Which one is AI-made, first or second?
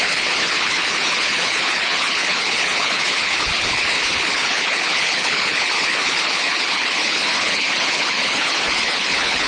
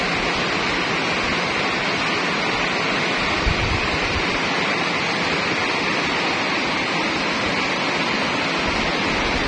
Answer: first